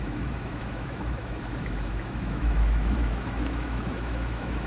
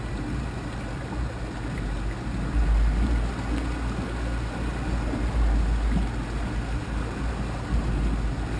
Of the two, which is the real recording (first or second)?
second